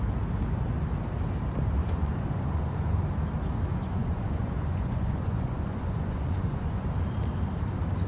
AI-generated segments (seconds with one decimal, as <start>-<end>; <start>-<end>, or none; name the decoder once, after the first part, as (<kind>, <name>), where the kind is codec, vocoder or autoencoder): 1.8-2.9 (vocoder, Vocos); 3.7-6.9